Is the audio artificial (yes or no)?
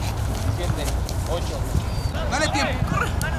no